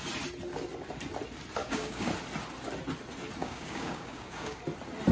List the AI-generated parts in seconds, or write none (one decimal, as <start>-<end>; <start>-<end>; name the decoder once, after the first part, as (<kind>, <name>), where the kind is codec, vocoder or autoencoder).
1.6-2.1 (codec, DAC); 3.4-4.6